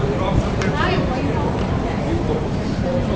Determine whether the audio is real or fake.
fake